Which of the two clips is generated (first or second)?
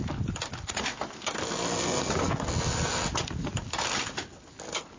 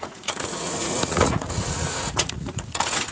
second